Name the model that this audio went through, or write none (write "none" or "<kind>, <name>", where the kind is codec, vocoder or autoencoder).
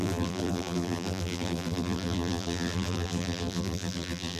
vocoder, BigVGAN v2